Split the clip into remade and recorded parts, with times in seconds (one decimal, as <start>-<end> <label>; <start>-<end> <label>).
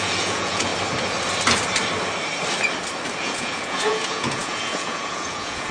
0.0-0.7 remade; 0.7-3.2 recorded; 3.2-5.7 remade